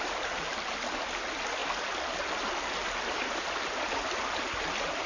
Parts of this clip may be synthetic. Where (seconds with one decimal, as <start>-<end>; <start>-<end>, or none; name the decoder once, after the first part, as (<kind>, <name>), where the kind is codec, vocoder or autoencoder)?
none